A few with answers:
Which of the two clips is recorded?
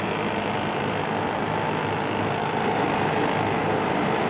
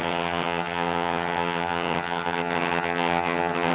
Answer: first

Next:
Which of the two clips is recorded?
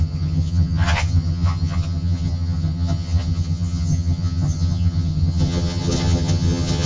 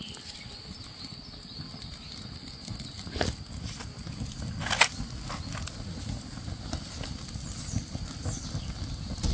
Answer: second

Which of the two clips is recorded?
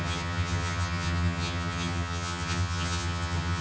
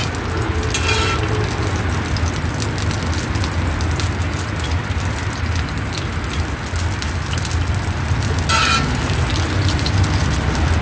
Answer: second